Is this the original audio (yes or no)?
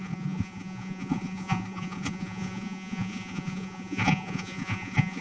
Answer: no